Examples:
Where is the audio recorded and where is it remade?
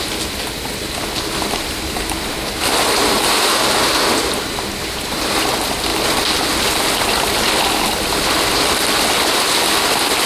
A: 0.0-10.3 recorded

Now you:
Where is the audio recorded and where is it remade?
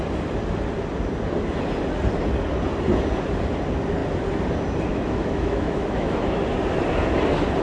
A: 0.0-4.9 recorded; 4.9-6.4 remade; 6.4-7.6 recorded